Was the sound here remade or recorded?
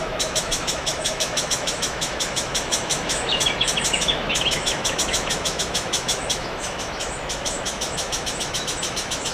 remade